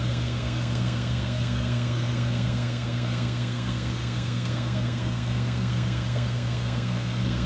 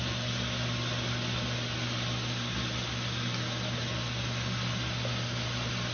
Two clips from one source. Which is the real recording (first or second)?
second